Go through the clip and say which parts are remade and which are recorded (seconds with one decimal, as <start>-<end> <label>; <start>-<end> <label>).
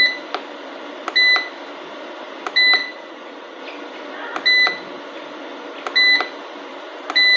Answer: 0.0-2.8 recorded; 2.8-3.6 remade; 3.6-7.4 recorded